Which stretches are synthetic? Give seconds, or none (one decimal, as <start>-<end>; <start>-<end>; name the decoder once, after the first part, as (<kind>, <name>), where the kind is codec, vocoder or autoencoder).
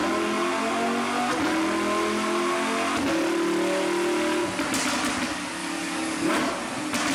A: 5.6-6.5 (codec, DAC)